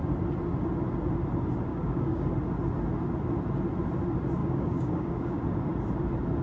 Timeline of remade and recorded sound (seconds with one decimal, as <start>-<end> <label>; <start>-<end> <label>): 0.0-1.7 recorded; 1.7-2.3 remade; 2.3-4.4 recorded; 4.4-5.4 remade; 5.4-6.4 recorded